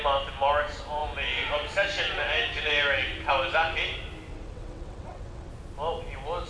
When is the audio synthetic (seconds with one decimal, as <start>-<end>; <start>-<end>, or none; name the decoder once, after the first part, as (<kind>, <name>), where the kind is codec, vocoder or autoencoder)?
4.3-5.5 (vocoder, WaveNeXt)